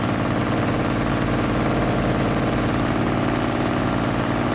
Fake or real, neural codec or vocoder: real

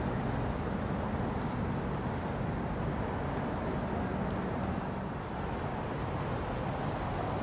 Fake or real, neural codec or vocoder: real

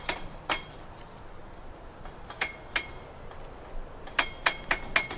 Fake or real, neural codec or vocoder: real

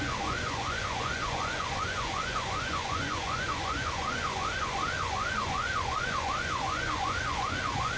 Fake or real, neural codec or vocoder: fake, vocoder, Vocos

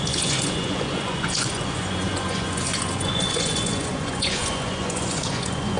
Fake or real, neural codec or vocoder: fake, vocoder, Vocos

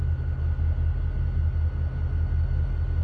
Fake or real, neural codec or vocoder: real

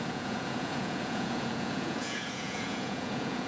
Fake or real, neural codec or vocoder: fake, vocoder, Vocos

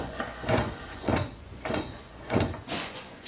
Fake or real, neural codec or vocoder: fake, vocoder, Vocos